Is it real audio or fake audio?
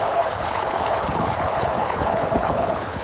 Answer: fake